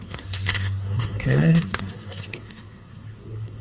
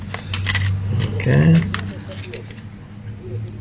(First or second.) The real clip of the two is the second